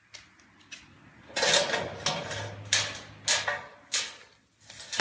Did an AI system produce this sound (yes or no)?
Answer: no